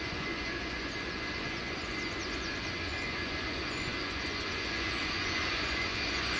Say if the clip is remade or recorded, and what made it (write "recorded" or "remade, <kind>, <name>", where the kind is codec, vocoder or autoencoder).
remade, vocoder, Vocos